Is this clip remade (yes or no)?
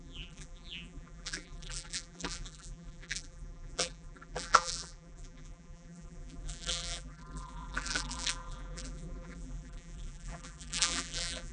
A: yes